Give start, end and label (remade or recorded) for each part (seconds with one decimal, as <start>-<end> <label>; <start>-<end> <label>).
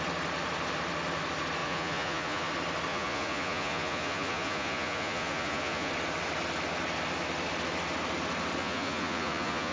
0.0-1.6 recorded; 1.6-2.5 remade; 2.5-2.9 recorded; 2.9-5.9 remade; 5.9-8.6 recorded; 8.6-9.7 remade